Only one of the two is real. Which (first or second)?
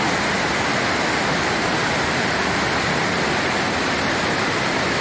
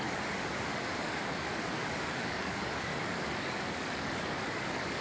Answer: first